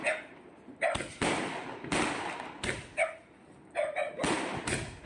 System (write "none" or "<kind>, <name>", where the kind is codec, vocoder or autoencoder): none